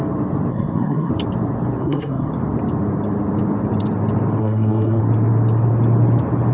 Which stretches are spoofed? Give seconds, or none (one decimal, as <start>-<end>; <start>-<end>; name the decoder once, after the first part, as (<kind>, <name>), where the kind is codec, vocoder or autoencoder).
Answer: 0.5-1.1 (codec, SNAC); 1.8-2.3; 4.4-5.0